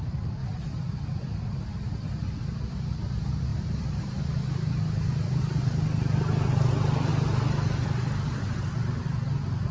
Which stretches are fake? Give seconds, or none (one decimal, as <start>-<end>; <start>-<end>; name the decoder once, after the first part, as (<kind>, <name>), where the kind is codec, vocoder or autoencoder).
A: 3.5-4.2 (vocoder, BigVGAN v2)